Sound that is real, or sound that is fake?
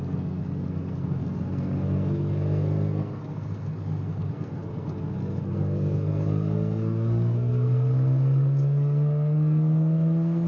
fake